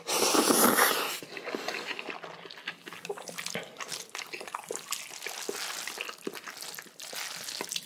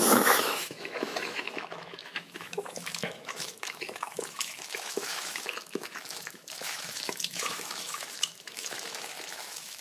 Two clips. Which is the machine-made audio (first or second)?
second